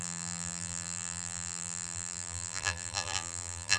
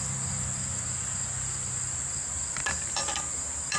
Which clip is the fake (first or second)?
first